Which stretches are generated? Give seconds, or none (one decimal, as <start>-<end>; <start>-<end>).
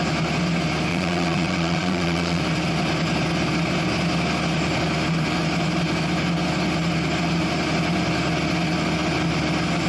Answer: 0.9-2.4